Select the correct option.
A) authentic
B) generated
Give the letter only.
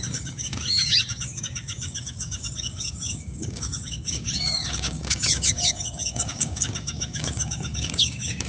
B